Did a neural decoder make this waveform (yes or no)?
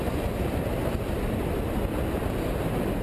no